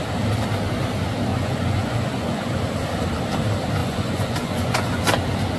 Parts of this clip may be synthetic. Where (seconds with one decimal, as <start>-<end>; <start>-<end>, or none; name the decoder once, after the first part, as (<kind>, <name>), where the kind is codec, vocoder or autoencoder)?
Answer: 1.3-2.6 (vocoder, Vocos); 3.8-5.0